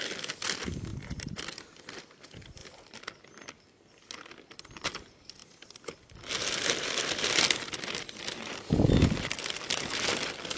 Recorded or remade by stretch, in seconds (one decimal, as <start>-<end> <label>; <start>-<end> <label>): 0.0-0.9 recorded; 0.9-2.0 remade; 2.0-5.4 recorded; 5.4-10.6 remade